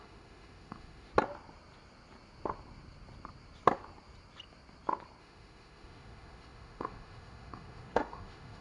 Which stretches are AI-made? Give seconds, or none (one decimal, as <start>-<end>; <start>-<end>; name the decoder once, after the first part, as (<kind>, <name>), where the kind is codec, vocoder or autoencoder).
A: 0.0-1.1 (autoencoder, DAC-VAE); 5.2-8.6